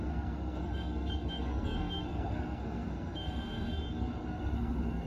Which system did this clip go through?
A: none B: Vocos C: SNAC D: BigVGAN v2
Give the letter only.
C